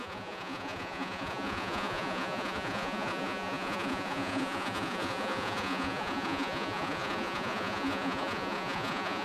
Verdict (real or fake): fake